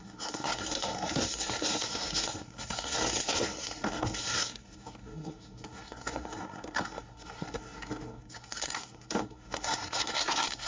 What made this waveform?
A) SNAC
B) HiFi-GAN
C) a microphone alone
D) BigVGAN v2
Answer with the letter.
A